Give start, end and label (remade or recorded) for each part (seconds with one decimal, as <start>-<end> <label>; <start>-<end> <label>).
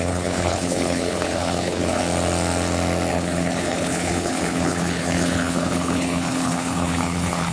0.0-2.0 remade; 2.0-3.1 recorded; 3.1-7.5 remade